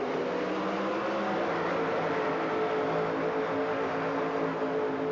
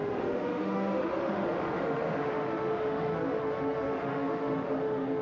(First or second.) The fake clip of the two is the second